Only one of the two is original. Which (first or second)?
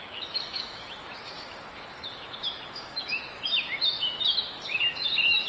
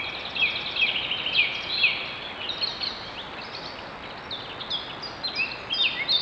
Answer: second